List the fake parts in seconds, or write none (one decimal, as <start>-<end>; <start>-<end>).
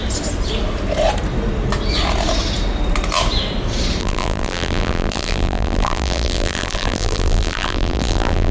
4.0-8.5